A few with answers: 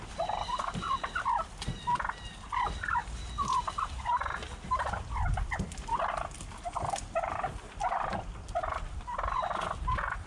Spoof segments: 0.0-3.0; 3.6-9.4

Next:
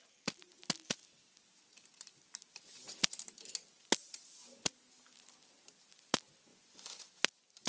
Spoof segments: 6.5-7.0

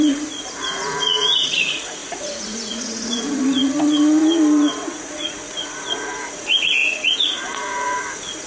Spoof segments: 0.0-8.5

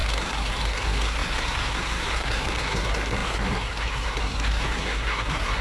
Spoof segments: 0.0-5.6